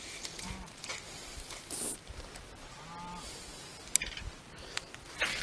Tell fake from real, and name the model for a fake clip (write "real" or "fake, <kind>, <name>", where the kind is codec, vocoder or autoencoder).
real